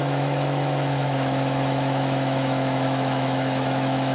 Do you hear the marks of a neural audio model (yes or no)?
yes